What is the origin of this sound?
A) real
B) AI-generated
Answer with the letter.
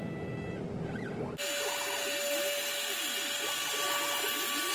A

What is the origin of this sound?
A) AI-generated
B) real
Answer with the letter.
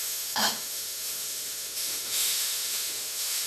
A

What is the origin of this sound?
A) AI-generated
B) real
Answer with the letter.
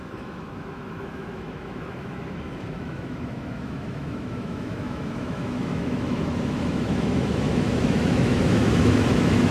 A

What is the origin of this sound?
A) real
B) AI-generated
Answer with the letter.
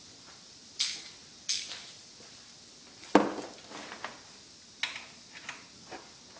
A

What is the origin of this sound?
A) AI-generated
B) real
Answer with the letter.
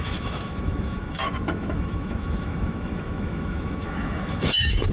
A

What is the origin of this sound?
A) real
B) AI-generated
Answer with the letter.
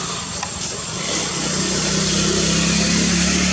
A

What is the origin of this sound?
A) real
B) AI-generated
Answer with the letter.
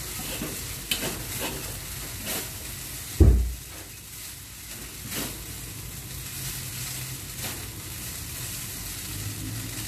A